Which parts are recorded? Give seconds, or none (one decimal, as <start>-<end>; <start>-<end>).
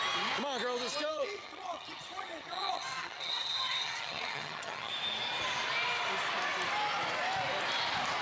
0.0-1.1; 4.9-8.2